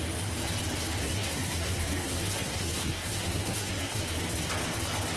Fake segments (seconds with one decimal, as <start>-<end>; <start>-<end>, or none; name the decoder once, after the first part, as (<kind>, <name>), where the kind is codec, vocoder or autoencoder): 1.0-4.0 (codec, SNAC)

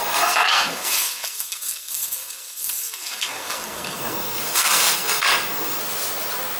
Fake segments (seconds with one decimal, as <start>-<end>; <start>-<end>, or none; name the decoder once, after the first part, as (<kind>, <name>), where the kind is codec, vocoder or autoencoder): 0.0-5.8 (codec, SNAC)

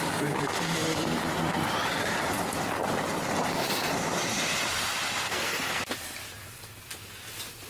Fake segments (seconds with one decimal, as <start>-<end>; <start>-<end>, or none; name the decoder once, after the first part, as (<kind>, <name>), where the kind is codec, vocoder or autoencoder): 5.2-5.8 (codec, SNAC)

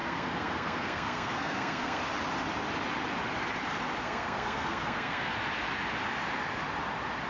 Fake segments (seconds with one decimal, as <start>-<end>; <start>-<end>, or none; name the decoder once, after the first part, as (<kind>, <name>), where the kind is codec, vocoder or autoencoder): 0.0-2.0 (codec, SNAC); 4.0-5.3

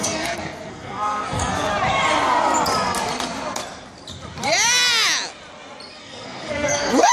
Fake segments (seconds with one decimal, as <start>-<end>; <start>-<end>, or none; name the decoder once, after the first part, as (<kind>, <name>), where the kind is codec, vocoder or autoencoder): 0.0-1.7 (codec, SNAC); 6.0-7.1

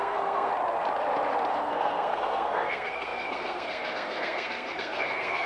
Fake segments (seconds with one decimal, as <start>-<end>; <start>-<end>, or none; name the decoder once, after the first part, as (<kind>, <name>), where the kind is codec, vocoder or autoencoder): 0.0-0.5 (codec, SNAC); 1.5-5.5